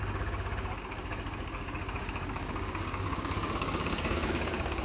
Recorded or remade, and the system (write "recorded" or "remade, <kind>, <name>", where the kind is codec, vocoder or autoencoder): remade, codec, DAC